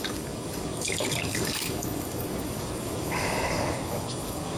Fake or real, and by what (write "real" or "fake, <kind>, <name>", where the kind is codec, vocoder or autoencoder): fake, codec, DAC